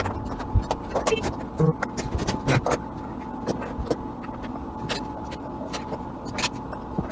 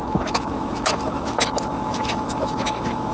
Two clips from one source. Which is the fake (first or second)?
second